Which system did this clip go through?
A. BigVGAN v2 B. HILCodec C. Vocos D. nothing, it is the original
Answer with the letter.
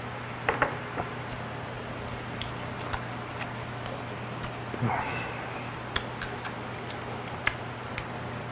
D